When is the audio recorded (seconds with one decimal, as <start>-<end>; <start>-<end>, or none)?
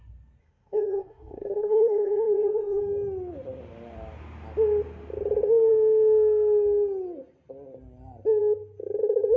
0.0-0.4; 2.8-9.4